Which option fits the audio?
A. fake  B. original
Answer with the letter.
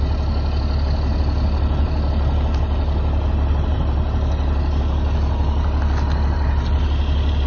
B